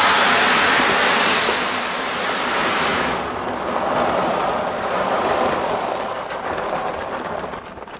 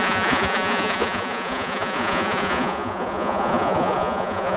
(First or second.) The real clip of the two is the first